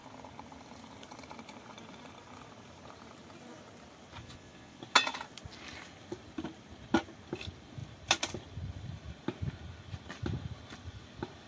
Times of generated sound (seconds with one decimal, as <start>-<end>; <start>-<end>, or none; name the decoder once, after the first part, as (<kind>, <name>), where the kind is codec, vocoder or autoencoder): 4.2-4.8 (vocoder, Vocos)